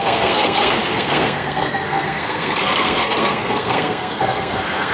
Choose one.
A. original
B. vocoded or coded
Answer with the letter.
B